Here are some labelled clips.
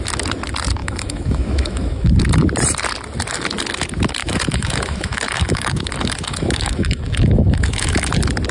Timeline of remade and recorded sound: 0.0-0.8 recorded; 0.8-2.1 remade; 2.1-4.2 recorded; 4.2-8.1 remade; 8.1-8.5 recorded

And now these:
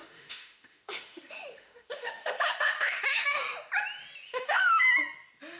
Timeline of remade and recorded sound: 0.0-3.4 remade; 3.4-4.3 recorded; 4.3-4.9 remade; 4.9-5.6 recorded

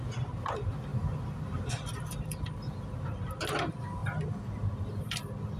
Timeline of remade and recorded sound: 0.0-5.6 recorded

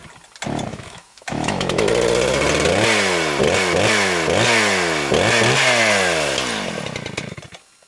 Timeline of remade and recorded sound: 0.0-0.7 recorded; 0.7-1.9 remade; 1.9-7.9 recorded